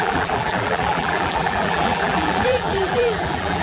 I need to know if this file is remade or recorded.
remade